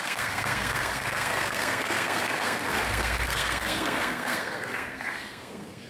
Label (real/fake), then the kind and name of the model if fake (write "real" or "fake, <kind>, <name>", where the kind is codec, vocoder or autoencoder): fake, codec, SNAC